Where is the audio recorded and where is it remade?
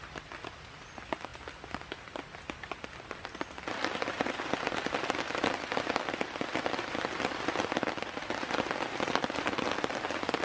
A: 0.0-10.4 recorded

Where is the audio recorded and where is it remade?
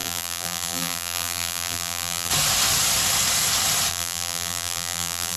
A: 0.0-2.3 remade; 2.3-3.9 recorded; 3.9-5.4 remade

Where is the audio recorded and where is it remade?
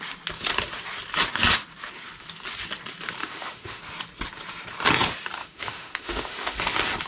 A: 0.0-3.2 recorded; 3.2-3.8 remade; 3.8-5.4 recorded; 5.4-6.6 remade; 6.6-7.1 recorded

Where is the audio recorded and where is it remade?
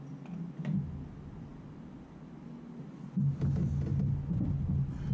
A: 0.0-5.1 recorded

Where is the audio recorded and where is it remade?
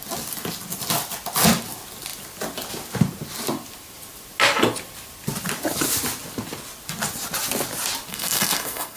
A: 0.0-8.1 recorded; 8.1-9.0 remade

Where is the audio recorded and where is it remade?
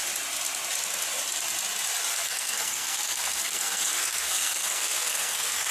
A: 0.0-2.1 recorded; 2.1-5.7 remade